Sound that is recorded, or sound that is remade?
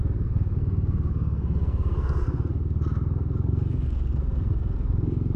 remade